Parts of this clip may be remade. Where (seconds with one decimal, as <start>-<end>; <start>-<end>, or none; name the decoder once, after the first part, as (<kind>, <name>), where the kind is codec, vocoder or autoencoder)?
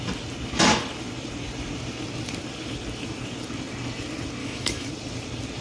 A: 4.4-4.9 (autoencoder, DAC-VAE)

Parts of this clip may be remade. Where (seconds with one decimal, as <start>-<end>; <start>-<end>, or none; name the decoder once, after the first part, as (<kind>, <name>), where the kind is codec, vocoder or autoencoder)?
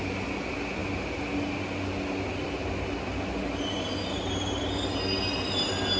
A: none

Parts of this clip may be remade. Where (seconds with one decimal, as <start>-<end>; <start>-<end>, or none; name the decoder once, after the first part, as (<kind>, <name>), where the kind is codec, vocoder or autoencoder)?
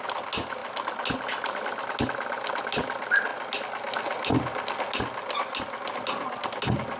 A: none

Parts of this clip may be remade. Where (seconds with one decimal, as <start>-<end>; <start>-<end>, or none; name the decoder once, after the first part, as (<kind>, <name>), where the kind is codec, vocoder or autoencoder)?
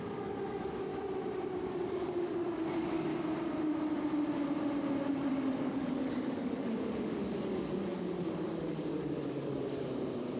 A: 0.0-0.9 (codec, DAC); 1.7-3.1; 5.3-10.4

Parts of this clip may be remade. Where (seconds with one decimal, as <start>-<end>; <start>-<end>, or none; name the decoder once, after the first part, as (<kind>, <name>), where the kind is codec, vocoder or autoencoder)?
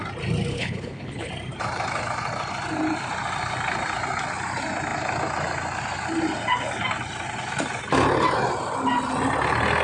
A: 0.5-1.3 (codec, HILCodec)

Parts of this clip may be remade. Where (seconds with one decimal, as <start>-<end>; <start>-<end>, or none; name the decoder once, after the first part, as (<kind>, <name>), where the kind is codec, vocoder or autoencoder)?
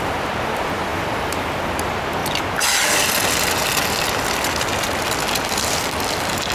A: none